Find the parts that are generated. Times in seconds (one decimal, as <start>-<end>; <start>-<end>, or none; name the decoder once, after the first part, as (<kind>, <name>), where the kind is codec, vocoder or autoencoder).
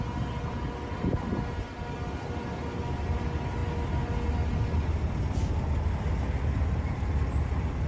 none